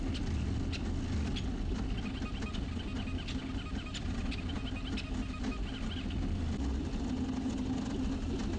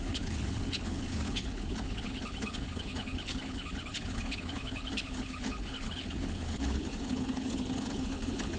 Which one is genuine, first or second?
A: first